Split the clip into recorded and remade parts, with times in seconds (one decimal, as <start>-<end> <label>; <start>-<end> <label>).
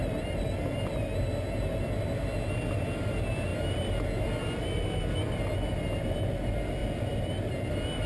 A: 0.0-8.1 recorded